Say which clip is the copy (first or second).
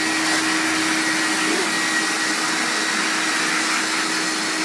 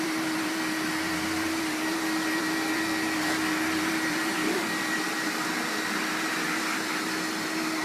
second